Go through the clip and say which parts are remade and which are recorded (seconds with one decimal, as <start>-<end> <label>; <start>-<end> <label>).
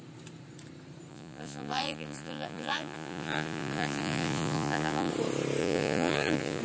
0.0-1.1 recorded; 1.1-5.1 remade; 5.1-5.6 recorded; 5.6-6.6 remade